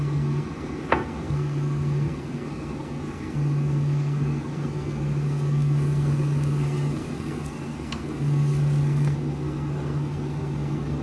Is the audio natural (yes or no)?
no